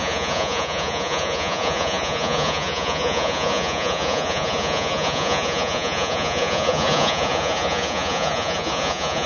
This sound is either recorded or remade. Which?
remade